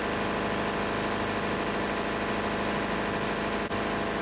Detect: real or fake real